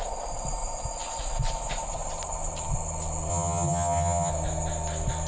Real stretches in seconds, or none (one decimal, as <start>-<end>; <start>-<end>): 0.0-3.3; 4.3-5.3